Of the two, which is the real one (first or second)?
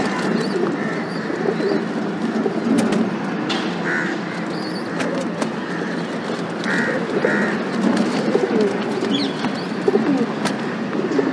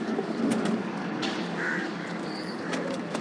first